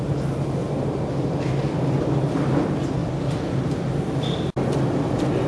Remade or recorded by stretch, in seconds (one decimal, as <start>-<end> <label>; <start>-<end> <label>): 0.0-5.5 recorded